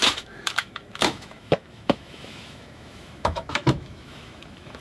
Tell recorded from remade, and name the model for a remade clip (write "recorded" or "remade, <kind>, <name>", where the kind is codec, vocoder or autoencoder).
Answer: remade, autoencoder, DAC-VAE